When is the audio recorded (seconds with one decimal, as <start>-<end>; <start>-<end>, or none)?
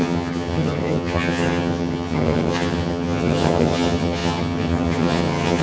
none